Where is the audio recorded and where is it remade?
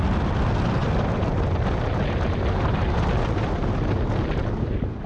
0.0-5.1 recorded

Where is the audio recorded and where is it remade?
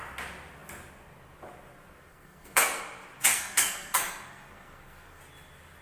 0.0-2.1 recorded; 2.1-2.8 remade; 2.8-3.2 recorded; 3.2-5.2 remade; 5.2-5.8 recorded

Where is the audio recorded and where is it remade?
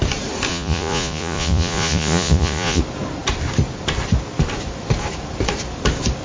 0.0-0.5 recorded; 0.5-2.8 remade; 2.8-6.2 recorded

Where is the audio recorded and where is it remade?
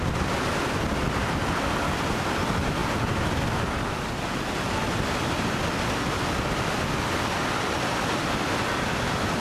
0.0-9.4 recorded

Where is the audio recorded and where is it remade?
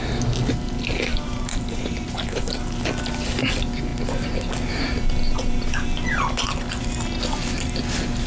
0.0-1.1 recorded; 1.1-2.6 remade; 2.6-8.3 recorded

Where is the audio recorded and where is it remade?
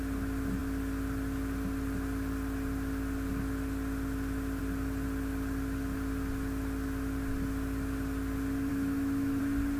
0.0-8.7 recorded; 8.7-9.4 remade; 9.4-9.8 recorded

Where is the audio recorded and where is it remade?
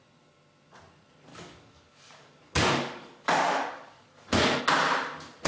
0.0-1.3 recorded; 1.3-4.6 remade; 4.6-5.5 recorded